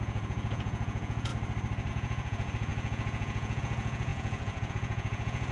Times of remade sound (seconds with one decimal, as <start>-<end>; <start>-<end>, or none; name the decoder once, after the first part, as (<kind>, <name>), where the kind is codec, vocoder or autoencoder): 0.0-1.3 (vocoder, Vocos); 1.9-5.5